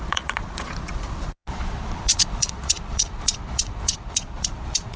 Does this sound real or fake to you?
fake